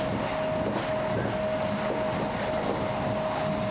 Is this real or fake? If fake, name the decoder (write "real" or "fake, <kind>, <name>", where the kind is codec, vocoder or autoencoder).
real